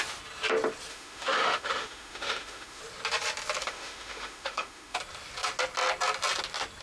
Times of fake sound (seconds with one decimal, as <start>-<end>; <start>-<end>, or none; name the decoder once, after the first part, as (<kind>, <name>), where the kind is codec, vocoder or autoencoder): 0.9-2.8 (autoencoder, DAC-VAE); 3.6-5.0